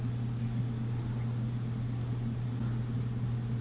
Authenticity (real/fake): real